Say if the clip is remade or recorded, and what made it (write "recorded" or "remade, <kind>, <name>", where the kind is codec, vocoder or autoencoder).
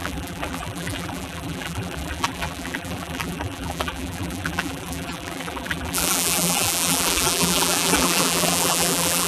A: remade, vocoder, BigVGAN v2